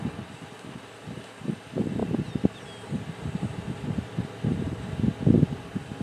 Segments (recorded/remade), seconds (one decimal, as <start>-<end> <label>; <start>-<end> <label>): 0.0-6.0 recorded